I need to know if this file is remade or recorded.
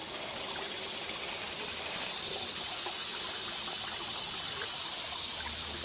recorded